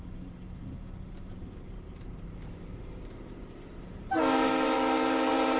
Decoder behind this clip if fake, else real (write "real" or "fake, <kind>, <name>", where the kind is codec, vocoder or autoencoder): fake, vocoder, BigVGAN v2